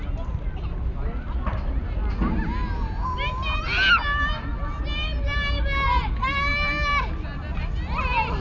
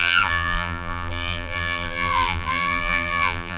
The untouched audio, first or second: first